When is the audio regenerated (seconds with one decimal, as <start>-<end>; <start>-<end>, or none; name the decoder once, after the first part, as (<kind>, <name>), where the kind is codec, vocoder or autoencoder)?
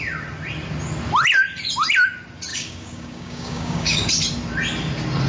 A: 2.5-4.1 (codec, DAC)